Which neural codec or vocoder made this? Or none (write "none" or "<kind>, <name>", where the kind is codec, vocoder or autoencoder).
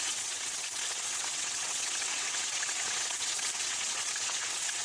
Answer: vocoder, WaveNeXt